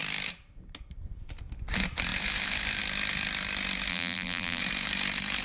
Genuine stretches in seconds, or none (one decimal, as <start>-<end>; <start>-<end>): 0.0-3.9; 4.6-5.4